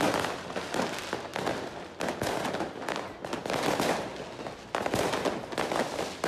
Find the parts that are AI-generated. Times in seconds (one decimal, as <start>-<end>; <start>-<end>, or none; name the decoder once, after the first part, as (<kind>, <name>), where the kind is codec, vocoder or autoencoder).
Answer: none